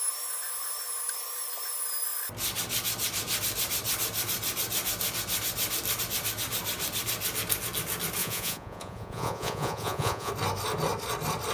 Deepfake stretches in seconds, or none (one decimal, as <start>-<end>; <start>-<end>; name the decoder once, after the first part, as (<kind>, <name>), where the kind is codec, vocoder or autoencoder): 8.2-10.3 (vocoder, Vocos)

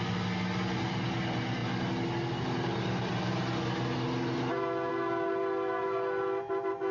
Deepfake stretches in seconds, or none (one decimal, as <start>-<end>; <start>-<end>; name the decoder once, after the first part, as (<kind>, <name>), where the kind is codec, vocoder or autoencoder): none